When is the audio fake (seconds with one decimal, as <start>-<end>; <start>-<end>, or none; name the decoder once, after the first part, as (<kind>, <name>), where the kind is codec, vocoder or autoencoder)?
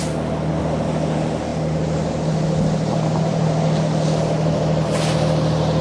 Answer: none